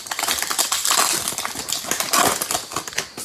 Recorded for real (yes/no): yes